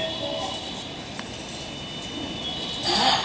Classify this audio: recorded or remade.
recorded